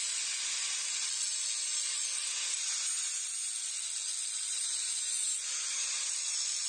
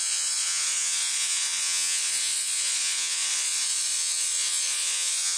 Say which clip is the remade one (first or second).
second